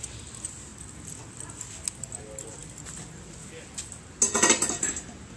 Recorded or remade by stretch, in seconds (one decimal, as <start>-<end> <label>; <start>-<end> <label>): 0.0-5.4 recorded